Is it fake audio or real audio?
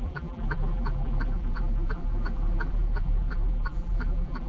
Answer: fake